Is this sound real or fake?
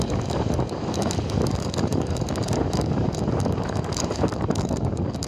fake